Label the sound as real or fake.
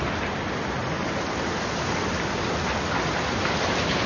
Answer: real